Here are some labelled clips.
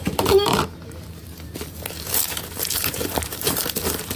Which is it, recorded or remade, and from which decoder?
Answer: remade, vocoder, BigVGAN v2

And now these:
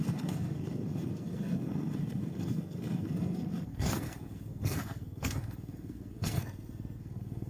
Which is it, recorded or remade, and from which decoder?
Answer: remade, codec, SNAC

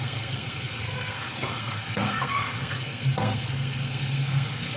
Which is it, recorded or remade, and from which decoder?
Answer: remade, codec, SNAC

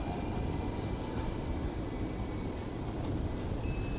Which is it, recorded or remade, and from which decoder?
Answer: remade, vocoder, BigVGAN v2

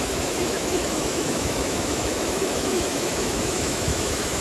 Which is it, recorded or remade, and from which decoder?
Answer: remade, autoencoder, DAC-VAE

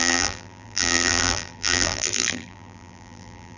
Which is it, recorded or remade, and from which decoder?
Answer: remade, vocoder, BigVGAN v2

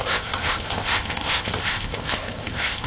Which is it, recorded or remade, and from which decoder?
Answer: remade, codec, ZipCodec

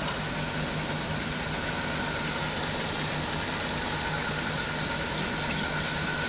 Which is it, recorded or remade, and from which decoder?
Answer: recorded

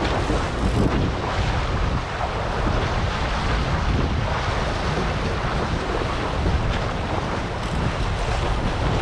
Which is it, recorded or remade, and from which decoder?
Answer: recorded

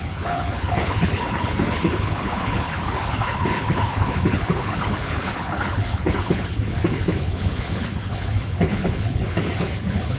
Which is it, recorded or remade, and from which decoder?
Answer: remade, codec, HILCodec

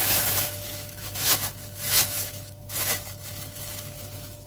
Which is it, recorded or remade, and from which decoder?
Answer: remade, autoencoder, DAC-VAE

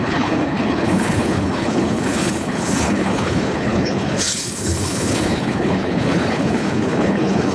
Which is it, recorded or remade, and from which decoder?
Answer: remade, codec, HILCodec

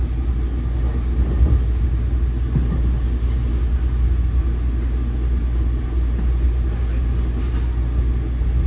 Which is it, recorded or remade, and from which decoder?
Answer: recorded